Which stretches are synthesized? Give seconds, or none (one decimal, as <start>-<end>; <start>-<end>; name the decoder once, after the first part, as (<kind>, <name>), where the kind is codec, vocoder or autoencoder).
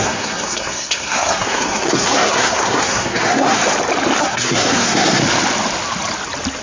0.0-3.6 (codec, SNAC); 4.2-5.2